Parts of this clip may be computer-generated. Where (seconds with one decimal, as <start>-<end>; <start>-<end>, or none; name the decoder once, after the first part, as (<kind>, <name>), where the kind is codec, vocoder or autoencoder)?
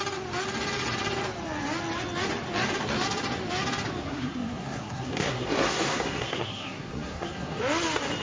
4.0-7.6 (codec, SNAC)